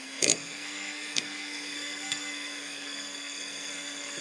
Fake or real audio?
fake